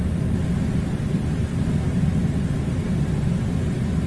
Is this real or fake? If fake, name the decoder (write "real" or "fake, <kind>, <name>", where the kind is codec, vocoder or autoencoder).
real